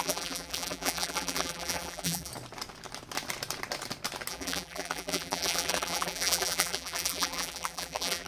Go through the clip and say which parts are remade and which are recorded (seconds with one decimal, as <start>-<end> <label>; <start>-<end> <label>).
0.0-2.3 remade; 2.3-4.3 recorded; 4.3-8.3 remade